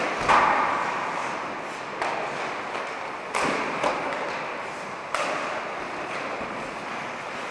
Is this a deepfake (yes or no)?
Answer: no